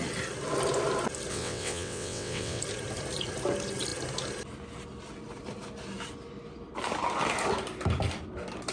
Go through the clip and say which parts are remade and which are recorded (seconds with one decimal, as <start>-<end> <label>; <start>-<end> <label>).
0.0-1.3 recorded; 1.3-2.6 remade; 2.6-8.7 recorded